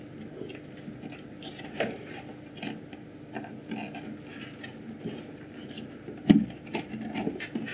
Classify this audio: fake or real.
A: real